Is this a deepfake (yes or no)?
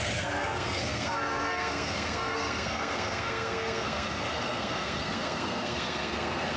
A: yes